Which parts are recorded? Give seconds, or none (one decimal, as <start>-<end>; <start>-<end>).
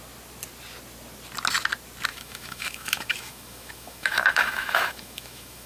0.0-2.1